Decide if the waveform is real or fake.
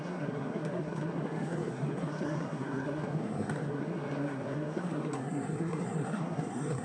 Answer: fake